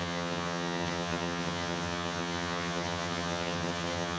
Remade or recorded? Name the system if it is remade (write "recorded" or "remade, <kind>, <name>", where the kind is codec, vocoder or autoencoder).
remade, vocoder, HiFi-GAN